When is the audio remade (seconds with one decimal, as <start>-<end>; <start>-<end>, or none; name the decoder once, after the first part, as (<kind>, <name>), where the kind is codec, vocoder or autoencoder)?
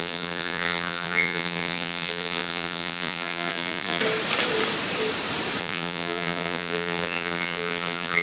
0.0-4.0 (vocoder, BigVGAN v2); 5.6-8.2